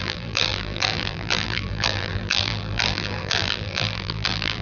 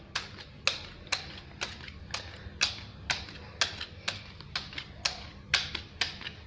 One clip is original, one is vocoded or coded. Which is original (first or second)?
second